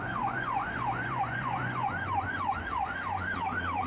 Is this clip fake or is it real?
fake